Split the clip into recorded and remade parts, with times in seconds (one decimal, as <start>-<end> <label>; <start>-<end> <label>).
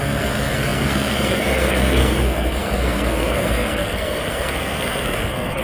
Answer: 0.0-5.6 remade